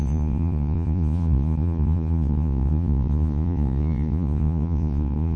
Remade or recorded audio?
remade